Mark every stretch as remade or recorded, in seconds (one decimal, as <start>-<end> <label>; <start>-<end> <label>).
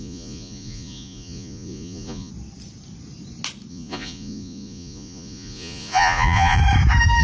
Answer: 0.0-2.3 remade; 2.3-3.7 recorded; 3.7-6.6 remade; 6.6-7.2 recorded